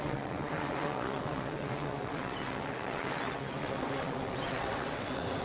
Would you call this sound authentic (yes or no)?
no